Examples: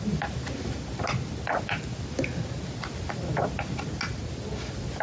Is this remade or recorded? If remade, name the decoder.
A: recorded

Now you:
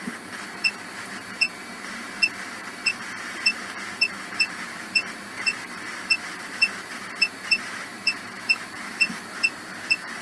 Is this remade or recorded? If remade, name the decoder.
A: remade, vocoder, BigVGAN v2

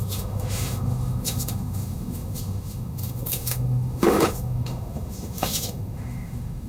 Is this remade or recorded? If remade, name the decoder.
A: remade, autoencoder, DAC-VAE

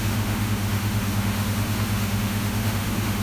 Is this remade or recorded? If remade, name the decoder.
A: remade, autoencoder, DAC-VAE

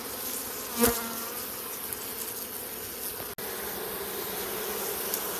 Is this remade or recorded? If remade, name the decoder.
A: recorded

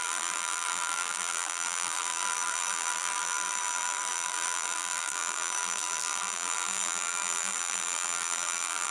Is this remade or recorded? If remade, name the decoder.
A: remade, vocoder, BigVGAN v2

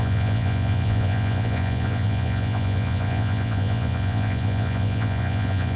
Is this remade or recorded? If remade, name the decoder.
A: remade, vocoder, Vocos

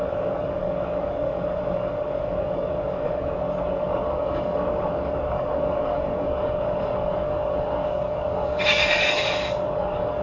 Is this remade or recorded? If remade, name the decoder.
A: remade, codec, DAC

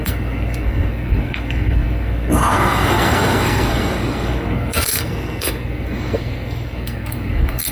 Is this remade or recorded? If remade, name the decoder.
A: remade, codec, SNAC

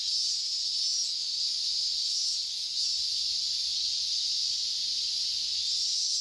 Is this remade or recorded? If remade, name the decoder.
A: recorded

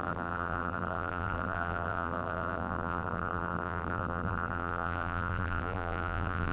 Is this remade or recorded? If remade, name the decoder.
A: remade, vocoder, BigVGAN v2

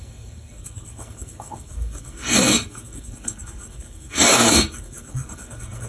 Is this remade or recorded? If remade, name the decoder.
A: remade, codec, SNAC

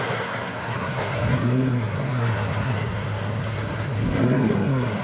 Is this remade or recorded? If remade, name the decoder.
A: remade, codec, SNAC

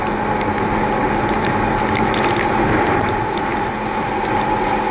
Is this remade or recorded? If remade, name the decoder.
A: recorded